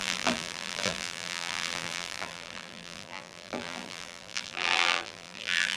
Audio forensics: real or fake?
fake